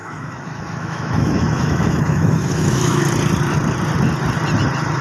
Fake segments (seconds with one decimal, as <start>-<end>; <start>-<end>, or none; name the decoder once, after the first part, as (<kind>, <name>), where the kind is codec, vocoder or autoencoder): 0.0-3.0 (autoencoder, DAC-VAE)